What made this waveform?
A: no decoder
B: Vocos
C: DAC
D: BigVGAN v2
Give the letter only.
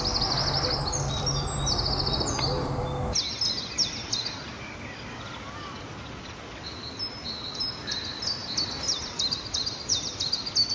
A